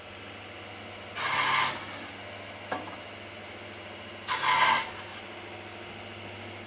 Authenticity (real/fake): real